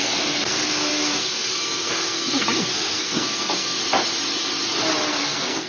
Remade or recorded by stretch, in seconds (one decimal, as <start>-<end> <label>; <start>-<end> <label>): 0.0-3.8 remade; 3.8-5.1 recorded; 5.1-5.7 remade